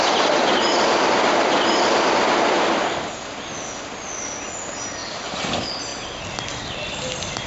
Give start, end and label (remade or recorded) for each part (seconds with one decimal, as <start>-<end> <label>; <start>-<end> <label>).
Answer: 0.0-5.0 recorded; 5.0-5.5 remade; 5.5-7.5 recorded